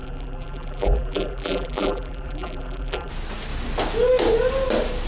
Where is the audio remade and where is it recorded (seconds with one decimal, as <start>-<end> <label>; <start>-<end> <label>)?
0.0-3.1 remade; 3.1-5.1 recorded